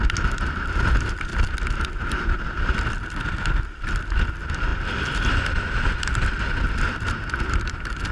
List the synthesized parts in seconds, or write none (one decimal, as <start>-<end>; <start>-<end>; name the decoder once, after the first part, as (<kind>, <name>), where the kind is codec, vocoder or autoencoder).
none